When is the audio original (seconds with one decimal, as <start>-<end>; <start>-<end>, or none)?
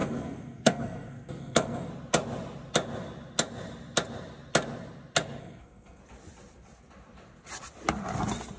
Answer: 1.9-5.4; 6.0-8.6